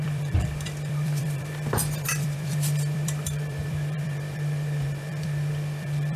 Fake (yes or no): yes